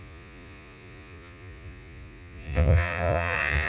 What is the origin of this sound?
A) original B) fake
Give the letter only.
B